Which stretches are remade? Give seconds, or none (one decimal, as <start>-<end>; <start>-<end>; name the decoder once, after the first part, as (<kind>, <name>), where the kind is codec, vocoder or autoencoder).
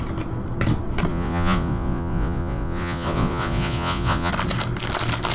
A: 1.1-4.3 (vocoder, Vocos)